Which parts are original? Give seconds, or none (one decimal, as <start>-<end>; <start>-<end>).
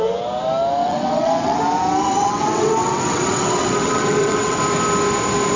0.0-0.8; 1.6-2.1; 4.6-5.6